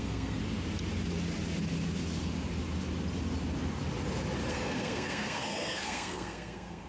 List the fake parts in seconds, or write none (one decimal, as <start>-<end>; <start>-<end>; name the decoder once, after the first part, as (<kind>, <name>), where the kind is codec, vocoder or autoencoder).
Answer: 0.0-0.4 (codec, SNAC); 4.5-6.9